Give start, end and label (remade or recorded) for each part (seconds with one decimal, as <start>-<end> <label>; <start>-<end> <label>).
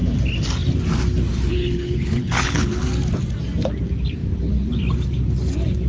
0.0-1.5 recorded; 1.5-2.8 remade; 2.8-5.9 recorded